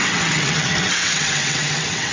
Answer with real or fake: fake